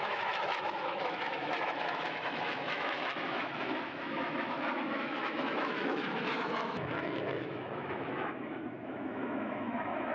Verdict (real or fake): fake